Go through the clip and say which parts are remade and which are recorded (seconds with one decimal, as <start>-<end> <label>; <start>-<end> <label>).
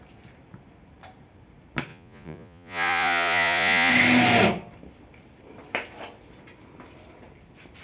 0.0-1.9 recorded; 1.9-3.9 remade; 3.9-7.8 recorded